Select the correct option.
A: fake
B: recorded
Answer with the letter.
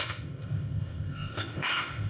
A